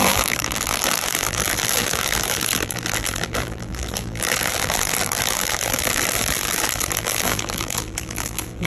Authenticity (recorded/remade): remade